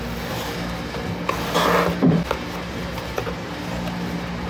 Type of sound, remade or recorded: recorded